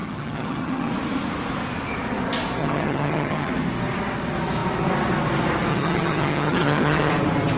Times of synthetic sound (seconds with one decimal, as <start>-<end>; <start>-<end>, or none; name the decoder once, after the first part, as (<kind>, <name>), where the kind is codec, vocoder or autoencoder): 0.0-0.9 (vocoder, HiFi-GAN); 2.6-3.5; 5.7-7.1